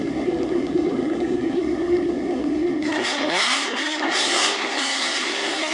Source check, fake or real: fake